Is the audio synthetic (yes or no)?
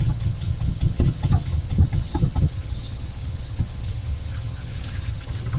yes